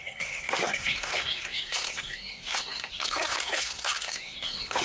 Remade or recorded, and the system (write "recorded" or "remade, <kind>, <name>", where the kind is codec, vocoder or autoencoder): remade, codec, SNAC